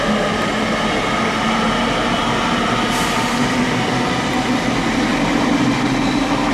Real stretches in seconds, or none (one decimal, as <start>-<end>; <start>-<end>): 0.0-6.5